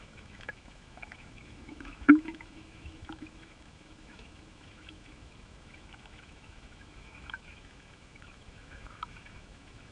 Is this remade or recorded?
remade